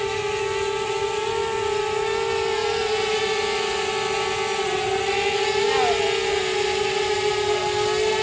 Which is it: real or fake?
real